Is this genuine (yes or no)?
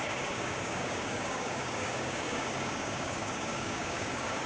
no